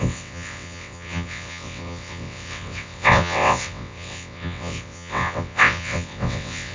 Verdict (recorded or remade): remade